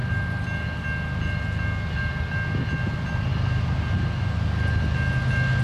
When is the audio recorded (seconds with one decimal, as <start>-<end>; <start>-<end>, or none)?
0.0-5.6